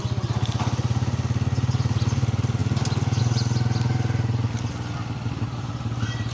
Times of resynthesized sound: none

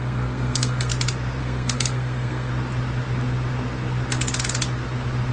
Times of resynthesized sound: 0.0-0.9 (codec, SNAC); 1.4-2.5

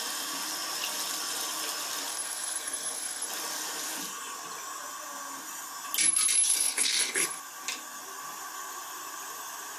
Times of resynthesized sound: 2.1-3.3 (codec, SNAC); 6.5-7.4

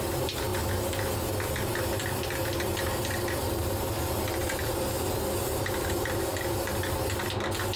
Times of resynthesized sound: none